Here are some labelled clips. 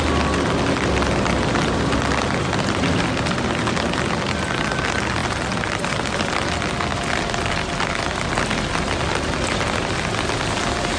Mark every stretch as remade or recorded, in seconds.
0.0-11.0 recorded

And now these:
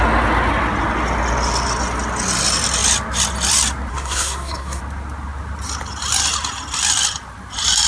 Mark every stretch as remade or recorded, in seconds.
0.0-3.9 recorded; 3.9-4.8 remade; 4.8-7.9 recorded

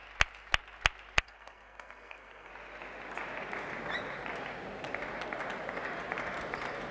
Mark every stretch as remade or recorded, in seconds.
0.0-1.2 recorded; 1.2-2.5 remade; 2.5-6.9 recorded

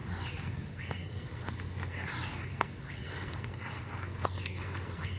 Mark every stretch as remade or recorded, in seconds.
0.0-5.2 remade

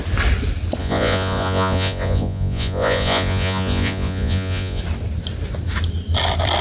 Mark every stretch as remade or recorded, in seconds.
0.0-0.8 recorded; 0.8-4.8 remade; 4.8-6.6 recorded

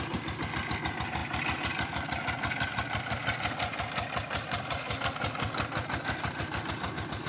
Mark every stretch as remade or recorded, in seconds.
0.0-7.3 recorded

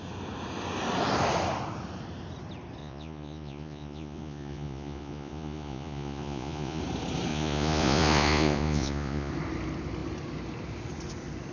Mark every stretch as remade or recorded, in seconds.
0.0-2.8 recorded; 2.8-6.8 remade; 6.8-7.3 recorded; 7.3-9.3 remade; 9.3-11.5 recorded